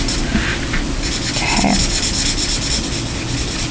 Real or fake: real